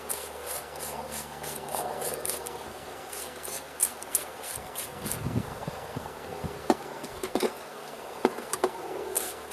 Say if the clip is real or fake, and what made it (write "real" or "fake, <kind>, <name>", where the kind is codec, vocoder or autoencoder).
fake, codec, SNAC